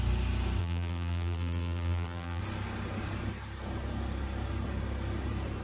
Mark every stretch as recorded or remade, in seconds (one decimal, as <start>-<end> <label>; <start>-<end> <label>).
0.0-0.6 recorded; 0.6-2.4 remade; 2.4-5.6 recorded